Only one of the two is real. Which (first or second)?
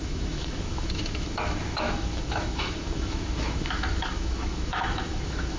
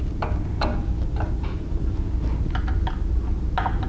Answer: second